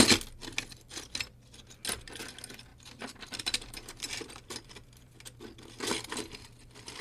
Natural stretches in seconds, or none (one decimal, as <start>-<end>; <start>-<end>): 0.0-2.7; 5.2-7.0